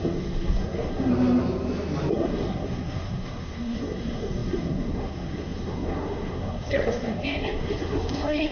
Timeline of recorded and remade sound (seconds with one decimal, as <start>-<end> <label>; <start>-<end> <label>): 0.0-1.1 remade; 1.1-2.1 recorded; 2.1-8.5 remade